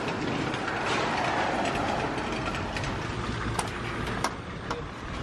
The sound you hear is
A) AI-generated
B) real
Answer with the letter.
B